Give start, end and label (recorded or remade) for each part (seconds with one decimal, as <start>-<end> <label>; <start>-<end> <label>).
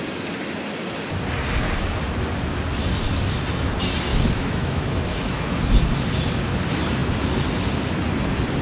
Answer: 0.0-4.1 recorded; 4.1-5.6 remade; 5.6-8.6 recorded